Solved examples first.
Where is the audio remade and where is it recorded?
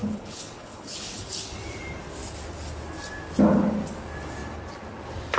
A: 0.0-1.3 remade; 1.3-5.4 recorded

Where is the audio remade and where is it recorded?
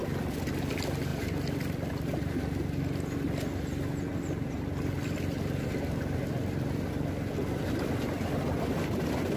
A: 0.0-9.4 recorded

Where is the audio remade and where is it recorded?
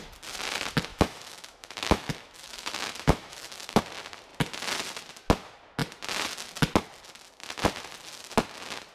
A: 0.0-0.9 recorded; 0.9-3.8 remade; 3.8-8.9 recorded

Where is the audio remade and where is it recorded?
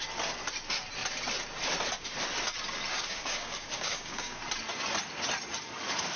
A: 0.0-2.9 recorded; 2.9-4.4 remade; 4.4-6.2 recorded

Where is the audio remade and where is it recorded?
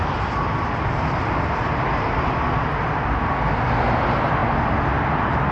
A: 0.0-5.5 recorded